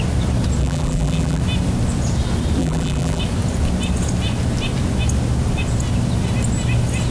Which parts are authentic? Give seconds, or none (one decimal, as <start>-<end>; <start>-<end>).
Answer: 0.0-0.6; 1.4-2.6; 3.2-7.1